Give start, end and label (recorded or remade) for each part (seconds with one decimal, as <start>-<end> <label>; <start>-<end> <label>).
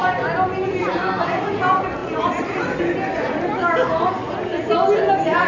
0.0-5.5 recorded